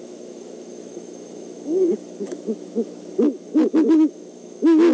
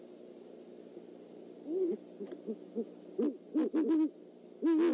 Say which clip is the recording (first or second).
second